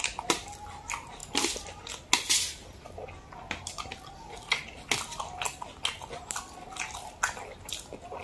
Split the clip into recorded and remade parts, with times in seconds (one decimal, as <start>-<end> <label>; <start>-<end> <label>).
0.0-8.2 recorded